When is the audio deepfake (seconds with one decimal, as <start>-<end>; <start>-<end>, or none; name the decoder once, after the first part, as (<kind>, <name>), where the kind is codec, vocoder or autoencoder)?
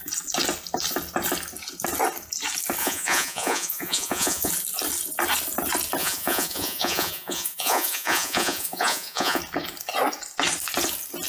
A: 2.8-4.5 (vocoder, Vocos); 6.0-9.4